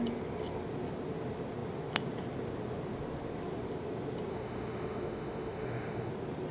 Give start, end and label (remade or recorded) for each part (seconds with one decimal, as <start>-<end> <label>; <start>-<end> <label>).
0.0-4.3 recorded; 4.3-6.1 remade; 6.1-6.5 recorded